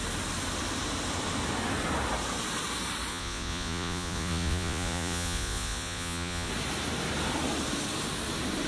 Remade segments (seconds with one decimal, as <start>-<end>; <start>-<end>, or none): 3.1-6.5